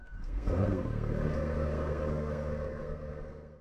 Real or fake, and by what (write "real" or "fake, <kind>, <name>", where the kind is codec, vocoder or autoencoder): fake, codec, SNAC